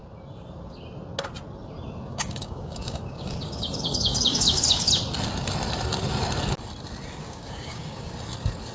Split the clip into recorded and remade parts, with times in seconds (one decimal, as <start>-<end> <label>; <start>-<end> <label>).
0.0-2.1 recorded; 2.1-4.9 remade; 4.9-7.2 recorded; 7.2-8.1 remade; 8.1-8.7 recorded

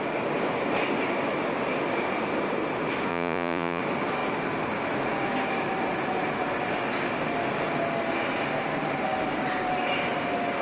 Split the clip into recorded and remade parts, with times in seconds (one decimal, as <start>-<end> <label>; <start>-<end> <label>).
0.0-3.1 recorded; 3.1-3.8 remade; 3.8-10.6 recorded

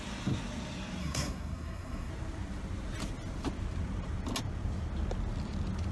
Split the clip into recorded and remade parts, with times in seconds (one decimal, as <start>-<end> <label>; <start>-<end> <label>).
0.0-1.0 recorded; 1.0-2.1 remade; 2.1-5.9 recorded

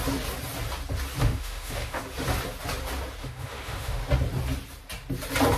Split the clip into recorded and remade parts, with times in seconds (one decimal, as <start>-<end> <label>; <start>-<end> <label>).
0.0-1.2 recorded; 1.2-2.0 remade; 2.0-3.2 recorded; 3.2-4.0 remade; 4.0-5.6 recorded

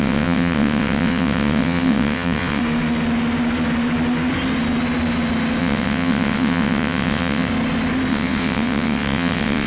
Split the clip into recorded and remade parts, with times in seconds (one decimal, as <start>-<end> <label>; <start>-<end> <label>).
0.0-2.6 remade; 2.6-5.6 recorded; 5.6-7.5 remade; 7.5-8.1 recorded; 8.1-9.7 remade

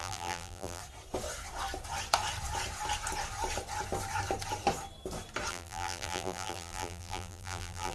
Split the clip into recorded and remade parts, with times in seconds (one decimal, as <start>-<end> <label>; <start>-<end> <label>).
0.0-0.8 remade; 0.8-5.5 recorded; 5.5-7.9 remade